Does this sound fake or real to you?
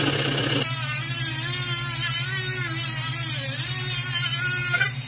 real